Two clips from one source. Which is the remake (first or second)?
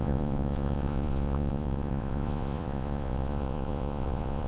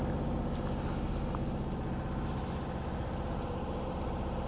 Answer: first